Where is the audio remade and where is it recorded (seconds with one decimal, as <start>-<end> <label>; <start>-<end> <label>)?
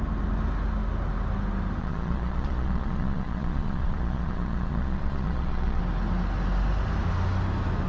0.0-1.8 recorded; 1.8-5.8 remade; 5.8-7.9 recorded